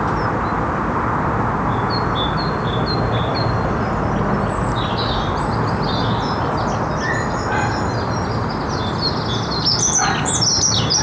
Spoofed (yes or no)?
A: no